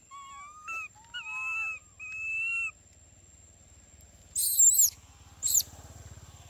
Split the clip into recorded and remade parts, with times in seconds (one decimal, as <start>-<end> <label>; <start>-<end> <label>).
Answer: 0.0-5.4 recorded; 5.4-6.0 remade; 6.0-6.5 recorded